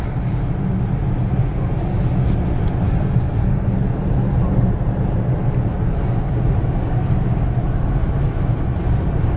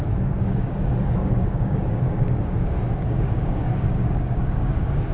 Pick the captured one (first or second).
first